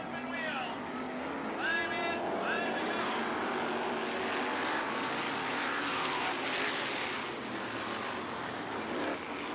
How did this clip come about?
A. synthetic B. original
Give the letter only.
B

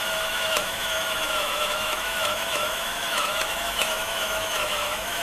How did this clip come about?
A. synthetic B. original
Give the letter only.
A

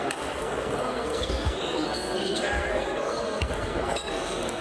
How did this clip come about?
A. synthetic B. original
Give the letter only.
A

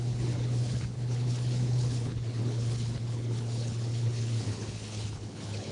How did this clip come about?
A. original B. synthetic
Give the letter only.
B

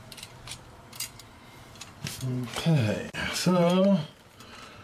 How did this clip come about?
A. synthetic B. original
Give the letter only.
A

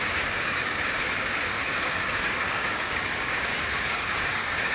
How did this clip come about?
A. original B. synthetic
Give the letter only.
B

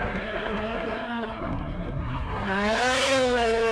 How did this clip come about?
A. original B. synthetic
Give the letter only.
B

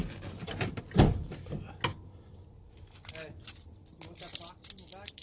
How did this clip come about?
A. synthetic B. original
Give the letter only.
B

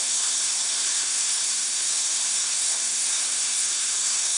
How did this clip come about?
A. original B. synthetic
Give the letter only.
B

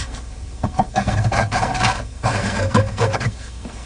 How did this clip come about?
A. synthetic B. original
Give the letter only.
A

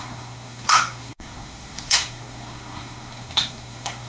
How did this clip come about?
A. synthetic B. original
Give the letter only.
A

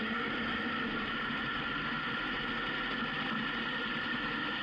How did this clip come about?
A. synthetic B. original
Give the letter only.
B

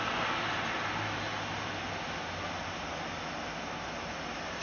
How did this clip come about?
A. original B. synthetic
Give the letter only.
A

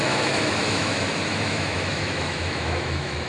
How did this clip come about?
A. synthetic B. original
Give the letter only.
A